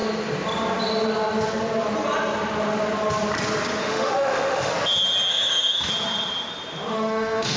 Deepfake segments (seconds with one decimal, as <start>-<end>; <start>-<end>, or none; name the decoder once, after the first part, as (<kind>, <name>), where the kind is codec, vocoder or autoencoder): 3.8-4.7 (autoencoder, DAC-VAE); 5.3-5.9; 6.9-7.6